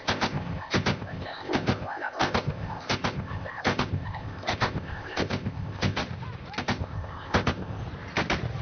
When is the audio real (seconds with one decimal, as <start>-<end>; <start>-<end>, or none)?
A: 6.0-6.6; 7.8-8.6

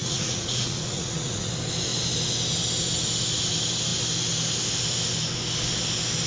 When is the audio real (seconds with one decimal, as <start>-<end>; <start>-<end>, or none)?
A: 1.5-6.3

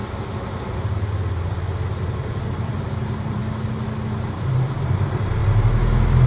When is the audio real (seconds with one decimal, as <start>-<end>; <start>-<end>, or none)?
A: 0.0-1.4; 3.4-4.1; 5.4-6.3

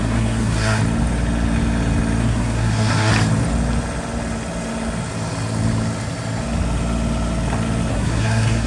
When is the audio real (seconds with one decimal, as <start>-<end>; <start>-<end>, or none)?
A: 0.8-2.2; 3.1-7.9

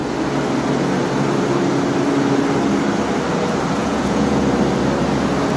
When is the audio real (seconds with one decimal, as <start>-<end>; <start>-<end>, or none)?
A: 0.0-3.8; 4.4-5.6

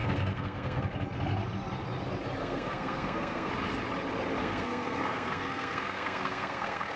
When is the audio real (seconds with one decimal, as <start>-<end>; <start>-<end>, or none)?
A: 0.9-2.4; 3.5-4.4

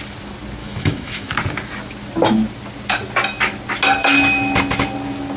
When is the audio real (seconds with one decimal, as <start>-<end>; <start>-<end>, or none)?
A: 0.0-0.6; 1.3-5.4